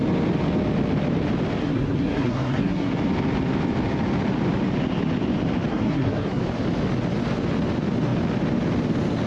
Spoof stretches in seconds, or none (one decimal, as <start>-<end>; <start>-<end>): 1.6-2.9; 5.7-6.4